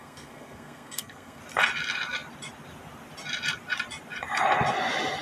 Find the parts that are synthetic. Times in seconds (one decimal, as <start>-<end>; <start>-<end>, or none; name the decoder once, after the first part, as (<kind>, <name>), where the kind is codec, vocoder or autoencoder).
0.0-1.4 (codec, SNAC)